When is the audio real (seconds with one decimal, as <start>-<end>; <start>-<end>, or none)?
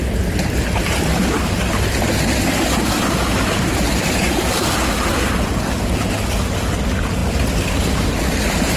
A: 0.0-8.8